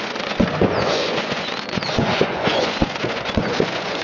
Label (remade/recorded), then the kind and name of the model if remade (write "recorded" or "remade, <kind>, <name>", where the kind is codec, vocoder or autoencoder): remade, vocoder, Vocos